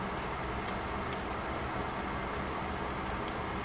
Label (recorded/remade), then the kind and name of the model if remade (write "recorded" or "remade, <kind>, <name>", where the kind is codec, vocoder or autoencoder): recorded